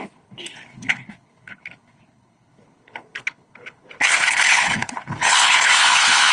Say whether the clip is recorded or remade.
remade